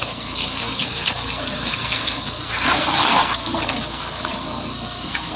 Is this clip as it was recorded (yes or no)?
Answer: no